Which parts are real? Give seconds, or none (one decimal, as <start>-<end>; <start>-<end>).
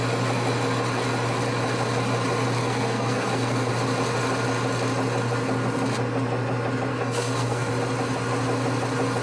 0.0-2.6; 3.7-6.9; 7.7-9.2